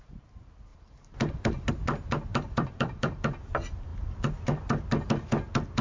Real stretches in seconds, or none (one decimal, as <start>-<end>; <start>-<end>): 0.0-0.7; 1.7-2.3; 3.4-5.8